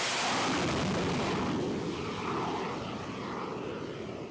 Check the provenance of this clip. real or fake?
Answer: real